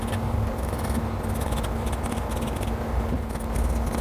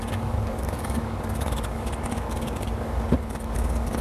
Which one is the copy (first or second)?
second